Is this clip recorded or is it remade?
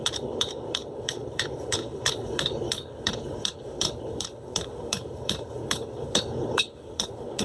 remade